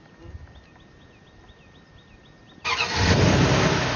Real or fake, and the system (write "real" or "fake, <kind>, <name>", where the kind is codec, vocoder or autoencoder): real